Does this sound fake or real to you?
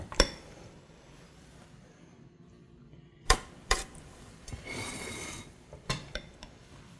fake